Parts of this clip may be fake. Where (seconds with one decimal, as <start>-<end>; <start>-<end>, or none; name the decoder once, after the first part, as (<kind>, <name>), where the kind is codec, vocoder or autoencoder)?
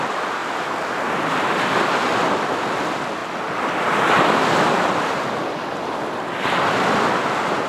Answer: none